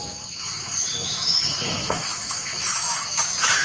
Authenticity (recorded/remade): remade